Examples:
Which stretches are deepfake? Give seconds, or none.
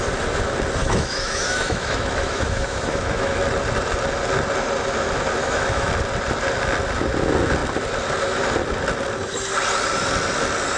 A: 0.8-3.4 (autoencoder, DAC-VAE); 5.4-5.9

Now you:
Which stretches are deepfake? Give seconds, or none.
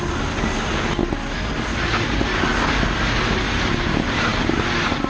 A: none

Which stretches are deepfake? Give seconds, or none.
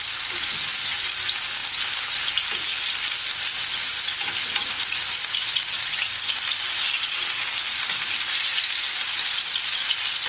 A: none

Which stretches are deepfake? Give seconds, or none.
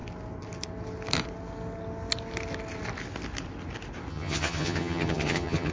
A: 4.1-5.7 (vocoder, HiFi-GAN)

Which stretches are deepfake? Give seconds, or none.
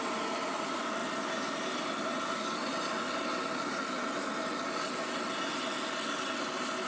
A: none